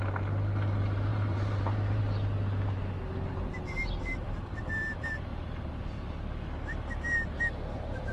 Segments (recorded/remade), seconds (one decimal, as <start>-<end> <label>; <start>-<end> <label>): 0.0-1.1 recorded; 1.1-2.0 remade; 2.0-4.1 recorded; 4.1-4.6 remade; 4.6-8.1 recorded